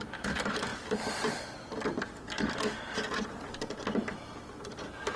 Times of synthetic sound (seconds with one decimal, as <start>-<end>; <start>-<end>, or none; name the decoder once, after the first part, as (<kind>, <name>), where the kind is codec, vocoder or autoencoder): none